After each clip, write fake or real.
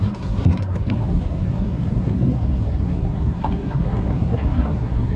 fake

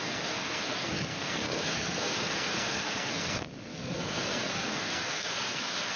fake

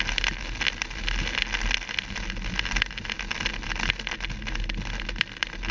real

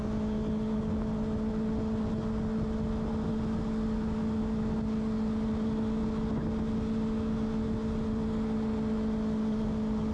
real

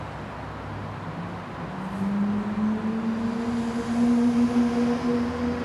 real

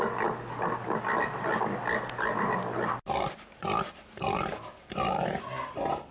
real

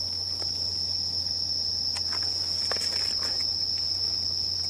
real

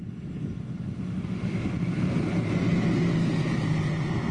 real